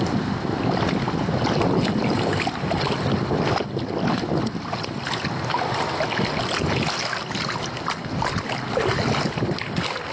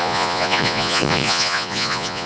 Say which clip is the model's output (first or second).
second